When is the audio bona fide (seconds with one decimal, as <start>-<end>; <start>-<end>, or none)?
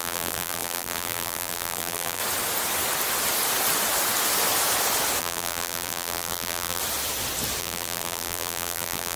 2.2-5.2; 6.8-7.6